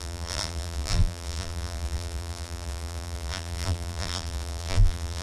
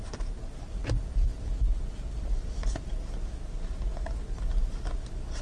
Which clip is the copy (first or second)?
first